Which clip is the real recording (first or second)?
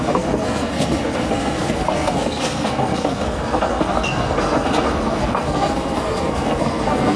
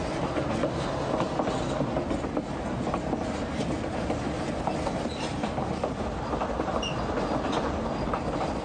second